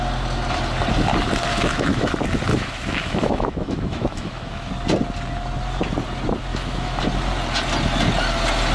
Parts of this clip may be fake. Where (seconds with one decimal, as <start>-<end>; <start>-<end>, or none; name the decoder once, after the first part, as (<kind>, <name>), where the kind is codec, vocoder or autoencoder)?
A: 1.5-2.1 (autoencoder, DAC-VAE); 2.5-4.7; 6.5-7.0